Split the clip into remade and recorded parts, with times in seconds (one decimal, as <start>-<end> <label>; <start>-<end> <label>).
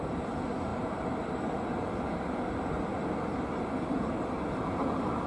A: 0.0-5.3 recorded